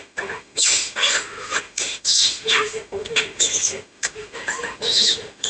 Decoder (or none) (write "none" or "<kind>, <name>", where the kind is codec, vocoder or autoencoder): autoencoder, DAC-VAE